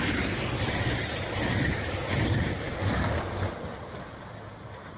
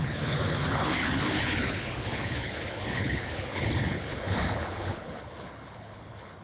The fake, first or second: second